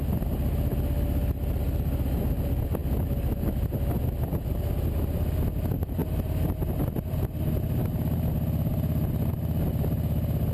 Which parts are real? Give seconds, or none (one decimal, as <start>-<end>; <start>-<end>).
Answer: 0.0-10.5

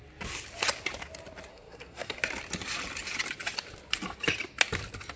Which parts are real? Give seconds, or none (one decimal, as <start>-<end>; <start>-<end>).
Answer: 0.0-1.5; 2.2-5.2

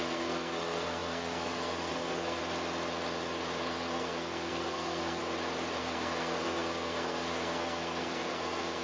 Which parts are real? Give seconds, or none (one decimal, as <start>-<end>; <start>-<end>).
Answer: 2.4-3.6; 5.2-5.8

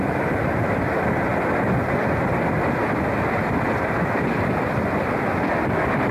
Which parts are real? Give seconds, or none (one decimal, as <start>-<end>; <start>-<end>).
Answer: 0.0-6.1

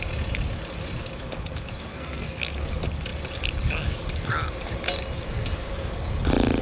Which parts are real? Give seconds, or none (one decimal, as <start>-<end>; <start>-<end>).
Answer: 0.0-1.9; 2.4-6.6

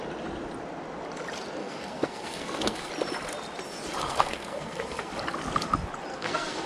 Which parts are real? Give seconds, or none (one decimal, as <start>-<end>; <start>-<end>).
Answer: 0.0-1.6; 2.9-4.0; 5.1-6.1